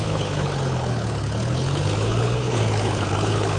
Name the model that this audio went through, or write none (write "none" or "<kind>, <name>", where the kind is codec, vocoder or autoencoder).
codec, HILCodec